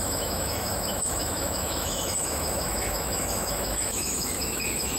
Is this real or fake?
fake